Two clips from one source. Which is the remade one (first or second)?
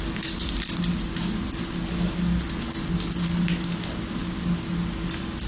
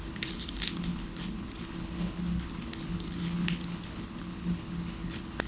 second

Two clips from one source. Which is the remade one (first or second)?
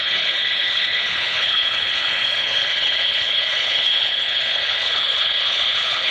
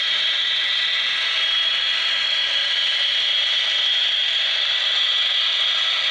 first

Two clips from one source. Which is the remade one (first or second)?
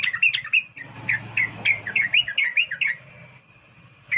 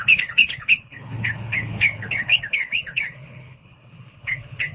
second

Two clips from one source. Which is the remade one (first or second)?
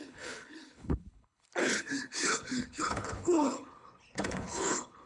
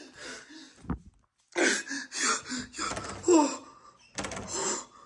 first